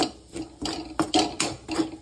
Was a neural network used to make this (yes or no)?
no